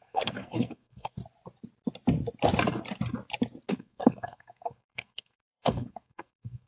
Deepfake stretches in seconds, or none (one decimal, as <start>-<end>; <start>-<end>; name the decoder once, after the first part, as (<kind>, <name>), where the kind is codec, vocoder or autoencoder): 0.0-1.2 (codec, SNAC); 3.7-6.7